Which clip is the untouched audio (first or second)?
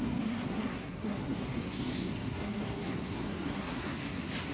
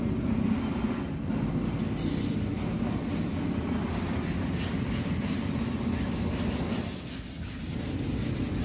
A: second